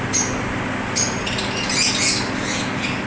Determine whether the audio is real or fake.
real